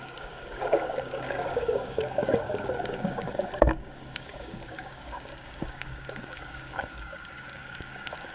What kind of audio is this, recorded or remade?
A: remade